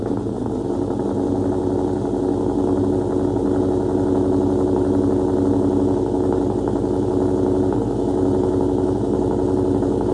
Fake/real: real